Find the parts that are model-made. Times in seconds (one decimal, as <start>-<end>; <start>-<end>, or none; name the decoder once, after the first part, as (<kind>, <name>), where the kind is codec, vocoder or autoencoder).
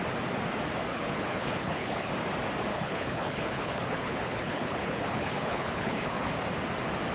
0.9-2.1 (codec, HILCodec); 2.7-6.3